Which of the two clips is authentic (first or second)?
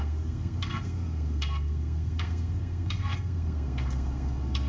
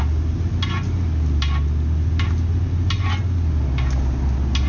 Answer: second